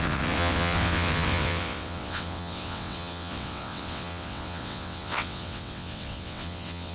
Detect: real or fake fake